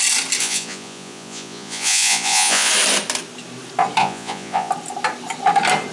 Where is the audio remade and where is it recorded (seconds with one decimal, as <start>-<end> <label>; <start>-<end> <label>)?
0.0-0.4 recorded; 0.4-2.7 remade; 2.7-4.0 recorded; 4.0-4.7 remade; 4.7-5.9 recorded